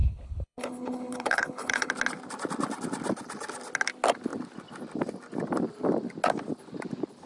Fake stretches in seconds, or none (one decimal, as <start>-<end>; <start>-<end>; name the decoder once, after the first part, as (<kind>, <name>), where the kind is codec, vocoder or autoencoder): 0.0-1.9 (codec, HILCodec)